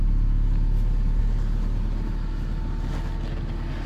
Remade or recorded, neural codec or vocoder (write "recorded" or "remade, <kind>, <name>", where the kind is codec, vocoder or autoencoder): recorded